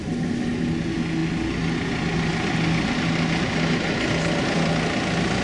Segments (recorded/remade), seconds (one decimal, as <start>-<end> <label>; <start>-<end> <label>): 0.0-5.4 recorded

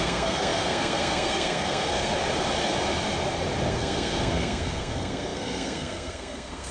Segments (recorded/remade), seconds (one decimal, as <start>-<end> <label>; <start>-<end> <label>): 0.0-2.1 remade; 2.1-3.7 recorded; 3.7-6.7 remade

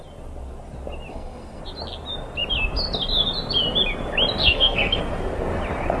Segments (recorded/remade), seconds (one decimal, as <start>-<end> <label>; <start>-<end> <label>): 0.0-1.1 recorded; 1.1-1.6 remade; 1.6-4.4 recorded; 4.4-5.0 remade; 5.0-6.0 recorded